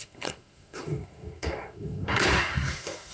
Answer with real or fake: fake